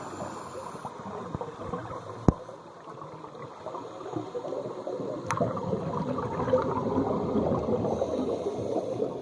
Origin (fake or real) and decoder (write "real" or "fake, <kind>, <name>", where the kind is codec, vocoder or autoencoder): real